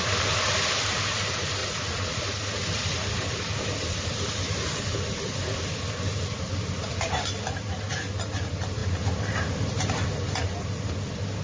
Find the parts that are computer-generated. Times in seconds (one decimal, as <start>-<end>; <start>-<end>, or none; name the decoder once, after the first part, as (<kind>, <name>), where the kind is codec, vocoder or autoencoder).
1.6-2.2 (vocoder, Vocos)